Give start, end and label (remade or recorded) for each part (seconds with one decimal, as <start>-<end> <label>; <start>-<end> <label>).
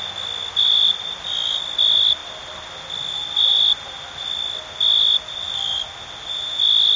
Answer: 0.0-0.4 recorded; 0.4-1.6 remade; 1.6-2.2 recorded; 2.2-4.2 remade; 4.2-7.0 recorded